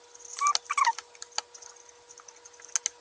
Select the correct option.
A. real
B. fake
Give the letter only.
A